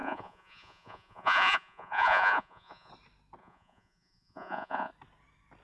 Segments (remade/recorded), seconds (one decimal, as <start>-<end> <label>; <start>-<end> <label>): 0.0-2.9 remade; 2.9-3.4 recorded; 3.4-4.9 remade; 4.9-5.6 recorded